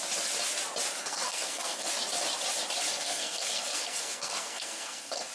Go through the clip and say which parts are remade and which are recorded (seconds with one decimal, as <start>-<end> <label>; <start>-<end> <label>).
0.0-1.0 recorded; 1.0-1.9 remade; 1.9-2.9 recorded; 2.9-5.3 remade